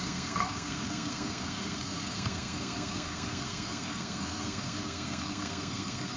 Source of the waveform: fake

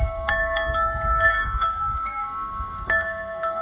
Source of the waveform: fake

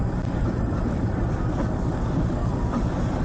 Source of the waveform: real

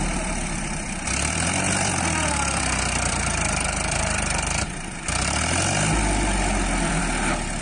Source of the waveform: fake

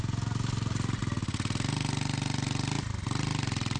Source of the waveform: real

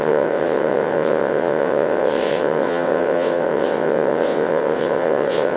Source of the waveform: fake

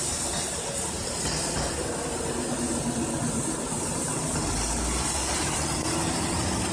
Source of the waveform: real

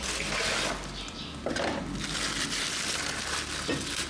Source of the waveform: real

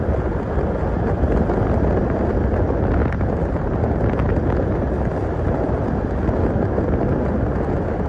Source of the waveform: real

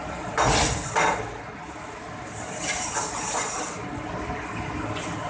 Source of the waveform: real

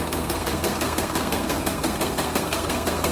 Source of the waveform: fake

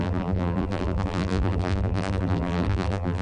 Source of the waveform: fake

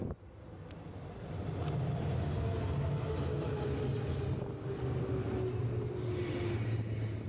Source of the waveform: real